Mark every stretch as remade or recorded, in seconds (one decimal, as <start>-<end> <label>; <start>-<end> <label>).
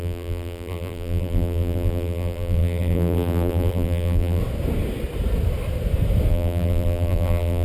0.0-4.4 remade; 4.4-6.3 recorded; 6.3-7.6 remade